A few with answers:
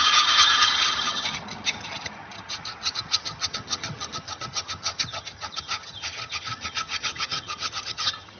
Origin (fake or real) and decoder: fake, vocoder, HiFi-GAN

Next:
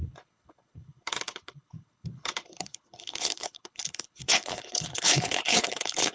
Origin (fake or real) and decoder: fake, codec, HILCodec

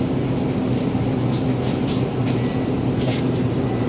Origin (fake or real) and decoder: real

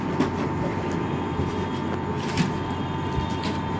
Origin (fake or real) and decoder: real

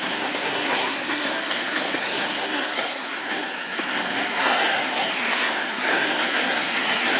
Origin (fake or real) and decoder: fake, codec, SNAC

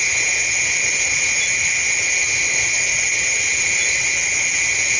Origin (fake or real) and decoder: real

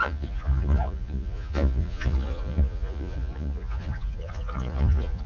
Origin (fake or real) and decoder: fake, vocoder, Vocos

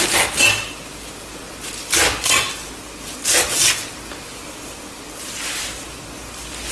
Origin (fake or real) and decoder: real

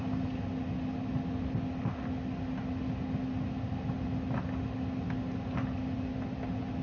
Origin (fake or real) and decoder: real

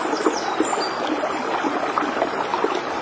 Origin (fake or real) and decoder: real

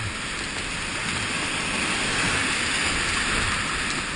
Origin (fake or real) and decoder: real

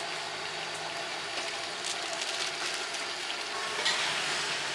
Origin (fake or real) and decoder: real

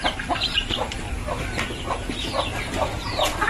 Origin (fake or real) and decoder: fake, vocoder, BigVGAN v2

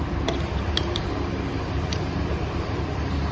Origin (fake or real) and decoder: fake, vocoder, BigVGAN v2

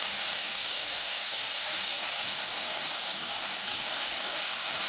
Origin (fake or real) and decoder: fake, codec, DAC